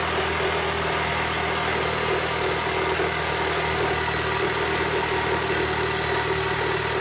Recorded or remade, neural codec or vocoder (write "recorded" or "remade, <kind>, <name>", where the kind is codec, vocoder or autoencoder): recorded